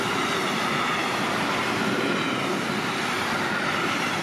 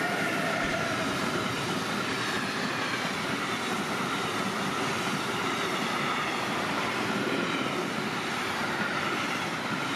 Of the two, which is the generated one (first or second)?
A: second